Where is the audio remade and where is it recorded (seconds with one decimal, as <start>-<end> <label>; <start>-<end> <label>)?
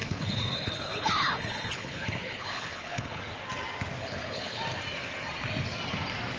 0.0-3.2 remade; 3.2-4.0 recorded; 4.0-4.6 remade; 4.6-6.4 recorded